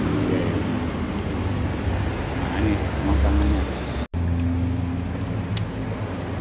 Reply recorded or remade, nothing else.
recorded